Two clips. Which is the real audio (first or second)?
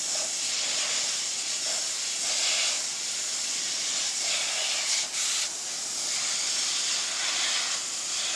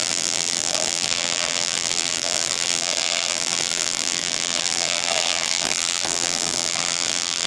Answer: first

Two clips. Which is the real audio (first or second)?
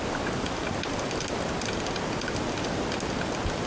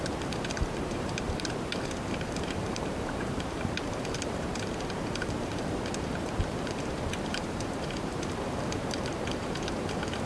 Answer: first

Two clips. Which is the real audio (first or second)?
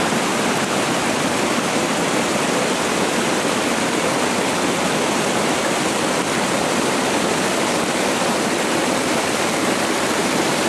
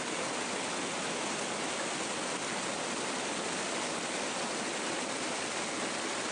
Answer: second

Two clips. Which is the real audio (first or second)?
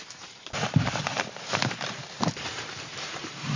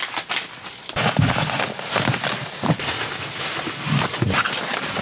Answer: second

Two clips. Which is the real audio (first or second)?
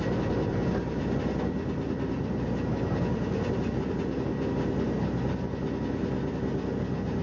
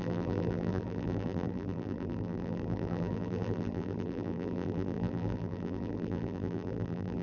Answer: first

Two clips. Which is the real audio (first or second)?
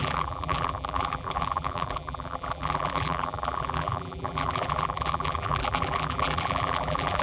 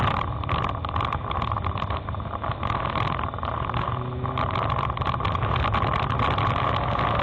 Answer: second